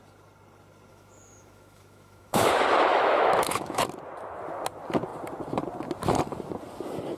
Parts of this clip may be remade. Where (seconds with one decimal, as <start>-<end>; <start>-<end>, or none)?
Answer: 0.9-2.5; 2.9-3.8